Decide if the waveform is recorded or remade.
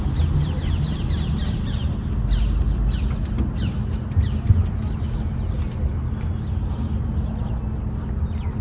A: recorded